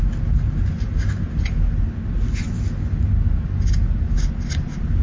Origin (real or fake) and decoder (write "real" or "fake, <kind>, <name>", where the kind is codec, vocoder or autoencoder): real